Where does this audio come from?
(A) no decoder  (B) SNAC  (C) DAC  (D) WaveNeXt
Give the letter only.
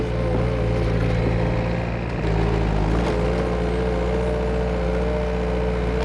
A